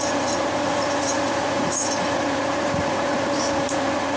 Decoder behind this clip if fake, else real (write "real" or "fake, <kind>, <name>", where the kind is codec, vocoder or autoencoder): fake, vocoder, Vocos